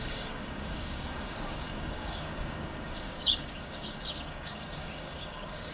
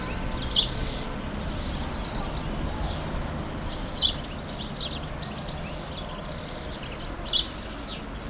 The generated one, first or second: first